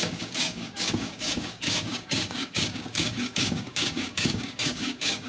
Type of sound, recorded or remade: remade